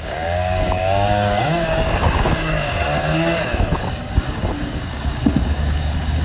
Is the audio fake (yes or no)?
yes